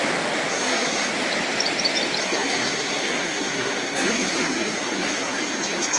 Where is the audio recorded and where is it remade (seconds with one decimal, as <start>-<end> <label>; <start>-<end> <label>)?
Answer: 0.0-0.5 recorded; 0.5-1.1 remade; 1.1-2.2 recorded; 2.2-6.0 remade